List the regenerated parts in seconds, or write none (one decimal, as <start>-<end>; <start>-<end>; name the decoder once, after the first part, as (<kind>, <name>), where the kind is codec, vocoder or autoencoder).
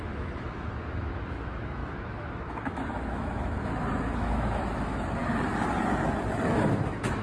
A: 0.0-5.2 (autoencoder, DAC-VAE); 6.3-7.2